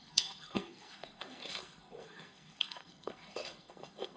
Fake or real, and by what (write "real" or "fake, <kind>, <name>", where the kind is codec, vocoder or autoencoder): fake, codec, SNAC